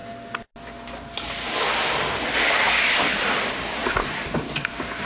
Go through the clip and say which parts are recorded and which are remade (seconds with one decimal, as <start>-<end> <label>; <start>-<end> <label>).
0.0-5.1 recorded